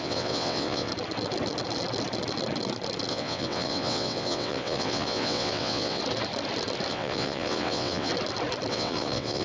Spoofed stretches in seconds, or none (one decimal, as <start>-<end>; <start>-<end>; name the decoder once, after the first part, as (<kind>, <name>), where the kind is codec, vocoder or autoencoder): 0.0-0.9 (vocoder, WaveNeXt); 3.1-6.0; 6.9-8.1; 8.7-9.4